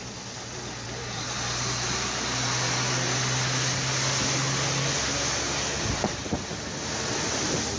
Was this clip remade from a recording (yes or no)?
no